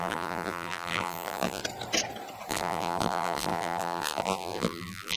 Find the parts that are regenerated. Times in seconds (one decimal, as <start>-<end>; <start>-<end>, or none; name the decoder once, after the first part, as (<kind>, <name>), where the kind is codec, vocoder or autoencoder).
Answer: 0.0-1.6 (vocoder, BigVGAN v2); 2.5-5.2